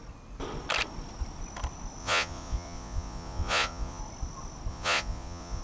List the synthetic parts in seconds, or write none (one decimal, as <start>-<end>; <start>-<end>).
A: 2.0-4.0; 4.7-5.6